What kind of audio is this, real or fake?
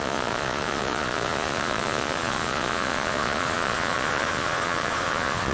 fake